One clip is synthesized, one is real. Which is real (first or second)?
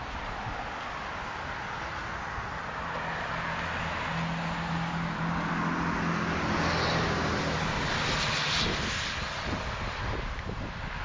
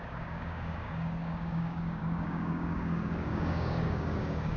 first